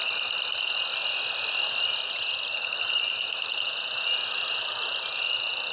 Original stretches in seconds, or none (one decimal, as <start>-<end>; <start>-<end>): 0.0-5.7

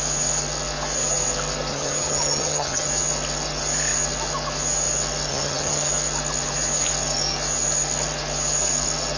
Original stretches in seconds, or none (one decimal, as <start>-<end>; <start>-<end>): 0.0-1.7; 2.9-5.3; 5.9-9.2

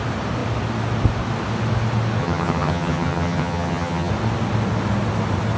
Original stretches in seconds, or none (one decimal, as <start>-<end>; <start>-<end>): 0.0-2.2; 4.1-5.6